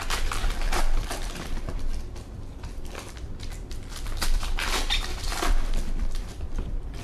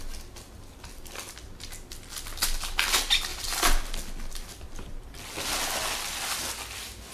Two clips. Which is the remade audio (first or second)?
first